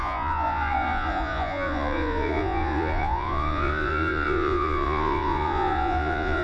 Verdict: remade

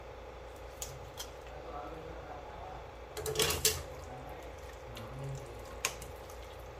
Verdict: recorded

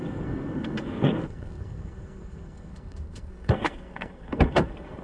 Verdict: remade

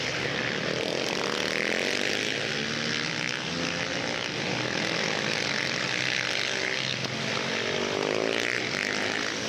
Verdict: recorded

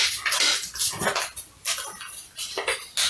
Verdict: recorded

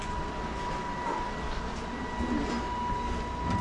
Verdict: recorded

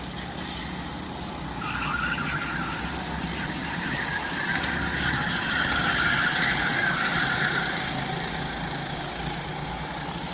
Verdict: recorded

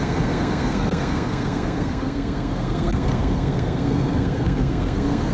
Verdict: remade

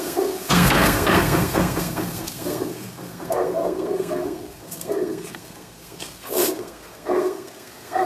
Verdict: remade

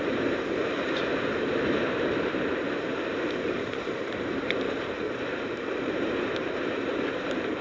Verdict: remade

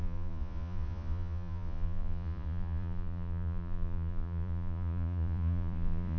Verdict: remade